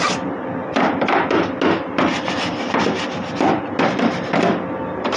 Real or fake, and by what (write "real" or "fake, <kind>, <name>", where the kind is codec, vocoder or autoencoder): real